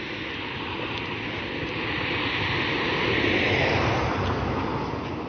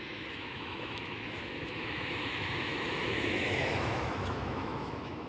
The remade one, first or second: second